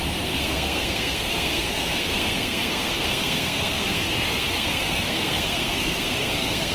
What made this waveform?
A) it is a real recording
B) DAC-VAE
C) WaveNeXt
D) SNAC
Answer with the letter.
D